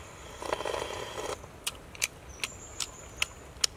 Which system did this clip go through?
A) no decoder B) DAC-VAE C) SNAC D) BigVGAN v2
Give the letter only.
A